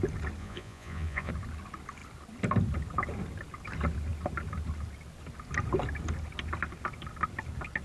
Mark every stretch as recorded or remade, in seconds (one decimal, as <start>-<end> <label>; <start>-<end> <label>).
0.0-0.4 recorded; 0.4-1.3 remade; 1.3-7.8 recorded